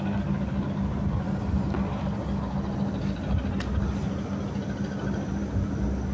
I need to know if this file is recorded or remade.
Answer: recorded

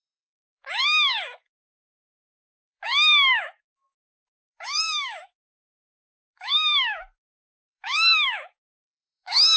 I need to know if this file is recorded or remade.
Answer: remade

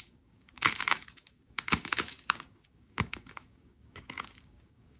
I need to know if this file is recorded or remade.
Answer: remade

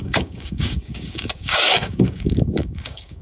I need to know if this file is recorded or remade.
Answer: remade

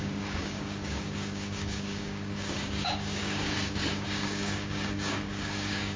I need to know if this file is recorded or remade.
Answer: remade